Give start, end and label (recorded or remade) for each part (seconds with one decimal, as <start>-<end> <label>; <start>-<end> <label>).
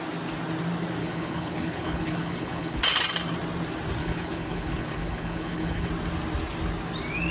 0.0-1.0 recorded; 1.0-2.8 remade; 2.8-4.0 recorded; 4.0-5.9 remade; 5.9-7.3 recorded